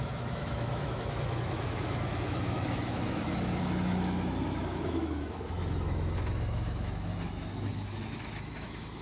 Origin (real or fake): fake